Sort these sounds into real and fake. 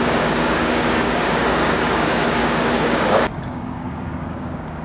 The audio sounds fake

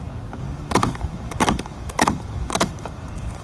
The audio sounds fake